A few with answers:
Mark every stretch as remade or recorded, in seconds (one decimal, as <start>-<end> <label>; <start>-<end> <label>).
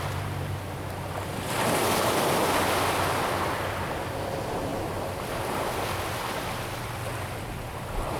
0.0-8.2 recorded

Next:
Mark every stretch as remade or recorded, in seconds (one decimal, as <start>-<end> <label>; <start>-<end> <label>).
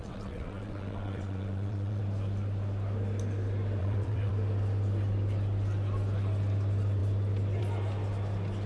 0.0-2.0 remade; 2.0-3.8 recorded; 3.8-4.3 remade; 4.3-8.7 recorded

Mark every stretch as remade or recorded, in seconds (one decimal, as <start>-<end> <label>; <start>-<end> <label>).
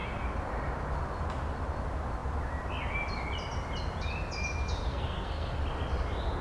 0.0-4.9 recorded; 4.9-5.6 remade; 5.6-6.4 recorded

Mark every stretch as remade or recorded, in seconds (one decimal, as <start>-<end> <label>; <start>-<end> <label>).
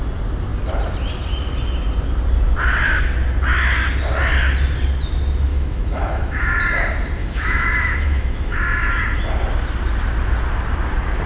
0.0-5.5 recorded; 5.5-6.6 remade; 6.6-7.2 recorded; 7.2-9.0 remade; 9.0-11.3 recorded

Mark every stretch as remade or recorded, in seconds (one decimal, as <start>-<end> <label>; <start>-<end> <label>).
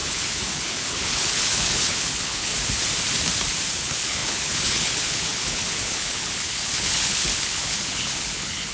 0.0-2.5 remade; 2.5-3.7 recorded; 3.7-8.7 remade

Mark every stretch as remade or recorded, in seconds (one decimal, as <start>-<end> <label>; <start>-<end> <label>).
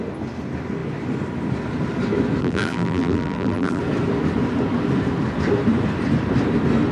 0.0-2.4 recorded; 2.4-3.8 remade; 3.8-6.9 recorded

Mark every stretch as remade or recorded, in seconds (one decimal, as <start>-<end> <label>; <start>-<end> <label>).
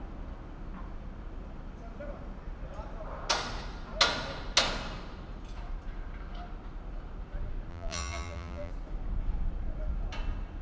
0.0-7.7 recorded; 7.7-8.7 remade; 8.7-10.6 recorded